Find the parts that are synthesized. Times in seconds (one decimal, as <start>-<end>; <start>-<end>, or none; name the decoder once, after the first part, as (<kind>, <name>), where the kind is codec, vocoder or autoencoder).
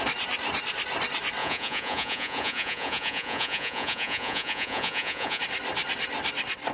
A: 1.4-5.4 (vocoder, Vocos)